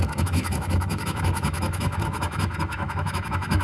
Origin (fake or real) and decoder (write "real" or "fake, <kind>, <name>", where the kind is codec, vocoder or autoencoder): fake, autoencoder, DAC-VAE